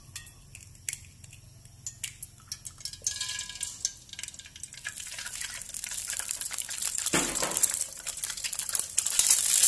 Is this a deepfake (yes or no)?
no